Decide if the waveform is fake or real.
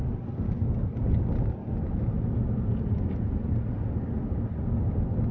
real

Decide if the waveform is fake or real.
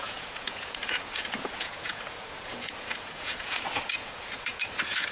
fake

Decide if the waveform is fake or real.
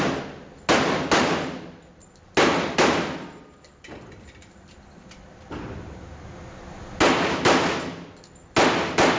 real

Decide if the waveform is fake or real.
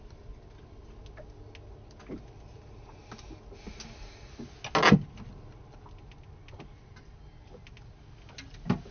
real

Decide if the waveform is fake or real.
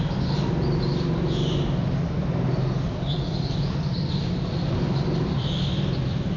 real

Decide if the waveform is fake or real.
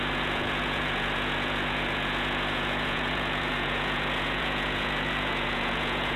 fake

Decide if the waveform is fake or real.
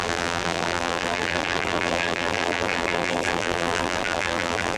fake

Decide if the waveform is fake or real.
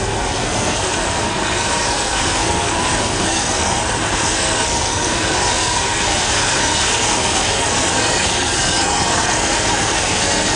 fake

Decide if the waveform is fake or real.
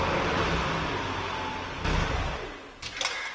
real